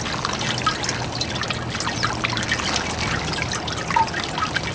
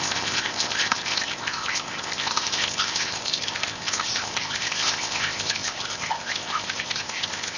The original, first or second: first